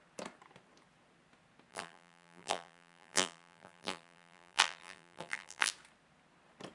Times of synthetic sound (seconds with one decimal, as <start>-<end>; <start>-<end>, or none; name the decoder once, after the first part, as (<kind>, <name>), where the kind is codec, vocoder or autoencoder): 1.7-5.7 (vocoder, BigVGAN v2)